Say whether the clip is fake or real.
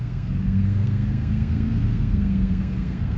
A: fake